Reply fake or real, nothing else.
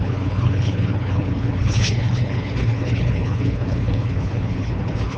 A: fake